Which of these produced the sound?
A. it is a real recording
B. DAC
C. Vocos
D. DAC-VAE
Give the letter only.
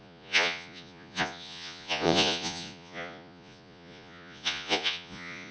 C